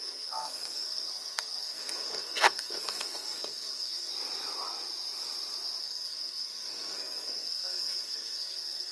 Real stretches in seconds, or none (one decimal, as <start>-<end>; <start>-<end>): 4.1-5.8